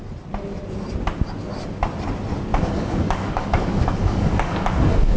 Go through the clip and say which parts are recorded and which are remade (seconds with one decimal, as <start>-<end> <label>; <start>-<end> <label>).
0.0-2.5 recorded; 2.5-5.2 remade

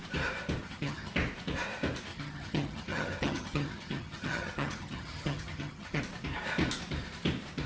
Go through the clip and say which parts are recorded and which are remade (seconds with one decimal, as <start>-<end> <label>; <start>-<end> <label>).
0.0-0.6 recorded; 0.6-1.1 remade; 1.1-2.1 recorded; 2.1-6.0 remade; 6.0-7.7 recorded

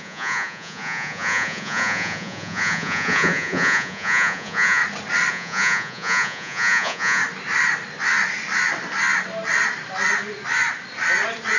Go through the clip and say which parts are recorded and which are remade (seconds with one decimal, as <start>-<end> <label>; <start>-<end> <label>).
0.0-4.8 remade; 4.8-5.3 recorded; 5.3-7.2 remade; 7.2-11.6 recorded

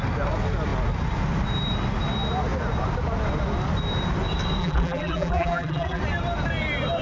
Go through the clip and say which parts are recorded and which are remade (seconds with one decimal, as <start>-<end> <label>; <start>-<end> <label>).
0.0-4.6 recorded; 4.6-6.0 remade; 6.0-7.0 recorded

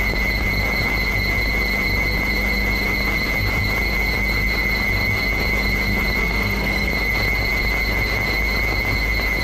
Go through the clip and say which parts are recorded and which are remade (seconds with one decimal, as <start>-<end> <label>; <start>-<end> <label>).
0.0-6.2 recorded; 6.2-6.9 remade; 6.9-9.4 recorded

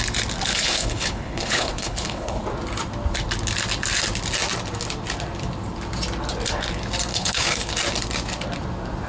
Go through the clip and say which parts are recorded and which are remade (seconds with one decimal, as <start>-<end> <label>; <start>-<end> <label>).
0.0-0.5 recorded; 0.5-2.4 remade; 2.4-7.1 recorded; 7.1-7.7 remade; 7.7-9.1 recorded